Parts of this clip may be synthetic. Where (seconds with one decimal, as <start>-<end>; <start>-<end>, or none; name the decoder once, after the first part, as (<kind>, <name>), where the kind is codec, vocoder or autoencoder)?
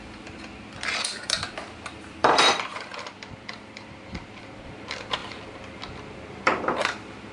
0.0-5.2 (vocoder, BigVGAN v2); 6.3-7.3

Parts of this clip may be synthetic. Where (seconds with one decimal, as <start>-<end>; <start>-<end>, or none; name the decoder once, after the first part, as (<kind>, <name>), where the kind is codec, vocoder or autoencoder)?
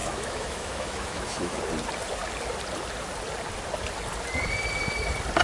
0.0-1.6 (autoencoder, DAC-VAE)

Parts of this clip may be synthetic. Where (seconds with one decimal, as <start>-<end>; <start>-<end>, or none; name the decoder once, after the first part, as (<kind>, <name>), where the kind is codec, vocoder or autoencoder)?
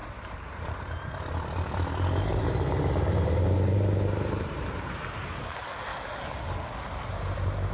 0.0-1.2 (vocoder, BigVGAN v2); 2.3-5.5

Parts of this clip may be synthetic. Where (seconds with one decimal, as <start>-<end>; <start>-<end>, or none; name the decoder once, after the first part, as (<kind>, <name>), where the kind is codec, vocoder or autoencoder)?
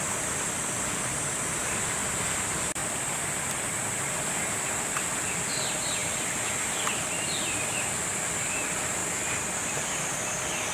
0.0-2.8 (vocoder, BigVGAN v2); 3.8-6.0; 7.1-9.0; 9.6-10.7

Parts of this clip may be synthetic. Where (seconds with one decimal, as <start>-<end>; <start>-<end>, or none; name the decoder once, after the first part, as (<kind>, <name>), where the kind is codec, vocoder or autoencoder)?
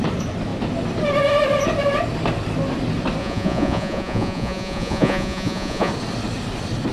3.2-5.9 (vocoder, Vocos)